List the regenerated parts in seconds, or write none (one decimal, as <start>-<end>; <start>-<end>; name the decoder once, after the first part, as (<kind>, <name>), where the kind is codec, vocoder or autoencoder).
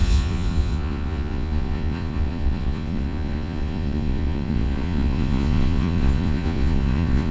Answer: 0.0-7.3 (vocoder, Vocos)